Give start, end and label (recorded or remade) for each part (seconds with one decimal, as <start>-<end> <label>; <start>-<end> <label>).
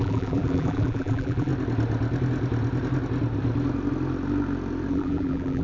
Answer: 0.0-1.5 remade; 1.5-4.9 recorded; 4.9-5.6 remade